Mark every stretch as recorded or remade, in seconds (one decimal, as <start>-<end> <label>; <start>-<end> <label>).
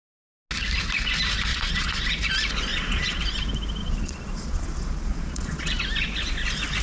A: 0.0-1.5 recorded; 1.5-2.1 remade; 2.1-2.7 recorded; 2.7-3.2 remade; 3.2-3.8 recorded; 3.8-5.8 remade; 5.8-6.8 recorded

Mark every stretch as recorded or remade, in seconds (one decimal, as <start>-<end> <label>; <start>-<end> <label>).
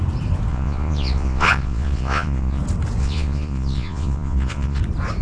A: 0.0-0.5 recorded; 0.5-2.6 remade; 2.6-3.0 recorded; 3.0-4.8 remade; 4.8-5.2 recorded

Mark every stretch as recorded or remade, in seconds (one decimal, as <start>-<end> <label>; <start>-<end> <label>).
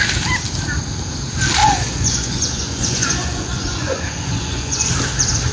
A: 0.0-1.6 recorded; 1.6-4.9 remade; 4.9-5.5 recorded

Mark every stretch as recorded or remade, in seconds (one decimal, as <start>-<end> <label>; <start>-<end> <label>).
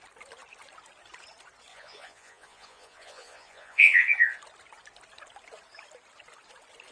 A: 0.0-1.7 recorded; 1.7-4.4 remade; 4.4-6.9 recorded